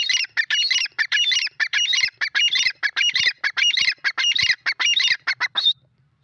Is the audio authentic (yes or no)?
no